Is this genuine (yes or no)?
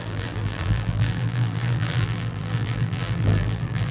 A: no